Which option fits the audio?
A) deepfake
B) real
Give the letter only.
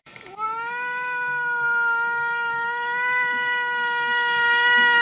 A